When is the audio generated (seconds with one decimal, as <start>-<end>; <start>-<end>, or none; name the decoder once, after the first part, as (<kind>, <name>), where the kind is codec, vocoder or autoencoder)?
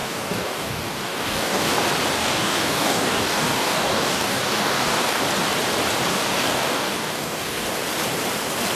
0.0-1.7 (codec, DAC); 2.2-5.2; 6.1-7.7